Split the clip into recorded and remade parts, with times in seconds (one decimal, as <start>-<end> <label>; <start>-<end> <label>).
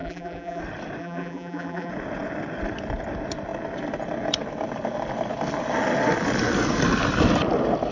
0.0-0.6 remade; 0.6-1.0 recorded; 1.0-1.9 remade; 1.9-7.9 recorded